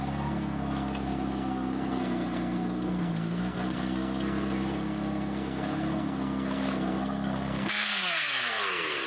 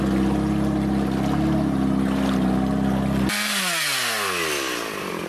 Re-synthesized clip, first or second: first